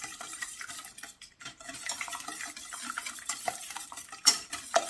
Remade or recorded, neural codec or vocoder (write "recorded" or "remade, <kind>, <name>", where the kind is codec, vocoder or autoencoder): remade, vocoder, BigVGAN v2